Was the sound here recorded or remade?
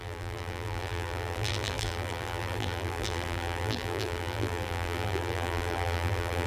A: remade